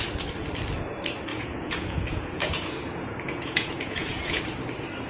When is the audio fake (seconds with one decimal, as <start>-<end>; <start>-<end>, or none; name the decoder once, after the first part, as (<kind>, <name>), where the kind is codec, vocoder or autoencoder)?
1.3-4.4 (vocoder, Vocos)